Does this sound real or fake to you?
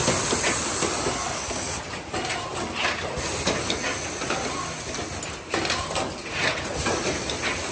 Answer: real